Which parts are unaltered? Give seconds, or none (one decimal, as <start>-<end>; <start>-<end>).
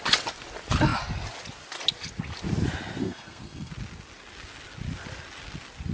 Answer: 0.0-3.0; 3.7-5.9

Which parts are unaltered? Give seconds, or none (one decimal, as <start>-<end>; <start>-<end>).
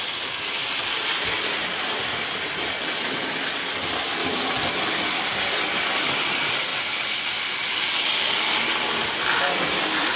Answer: 0.0-10.2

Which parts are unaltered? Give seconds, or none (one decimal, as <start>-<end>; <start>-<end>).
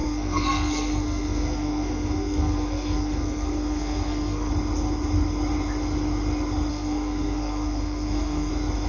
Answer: 4.5-6.7; 8.5-8.9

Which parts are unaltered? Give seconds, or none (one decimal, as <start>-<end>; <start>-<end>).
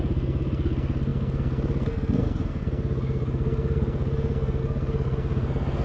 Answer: none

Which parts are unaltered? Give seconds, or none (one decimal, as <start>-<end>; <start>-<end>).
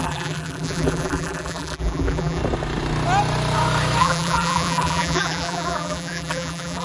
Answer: 2.4-4.0